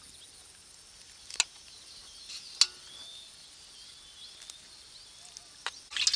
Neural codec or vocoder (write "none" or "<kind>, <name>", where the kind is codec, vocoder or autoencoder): none